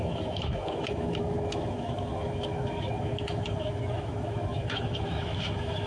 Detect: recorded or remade remade